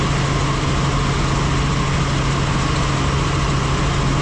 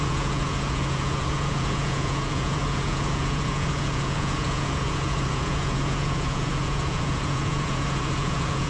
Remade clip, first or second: second